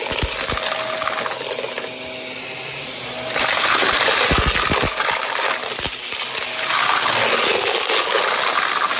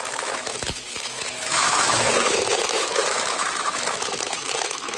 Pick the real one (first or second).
first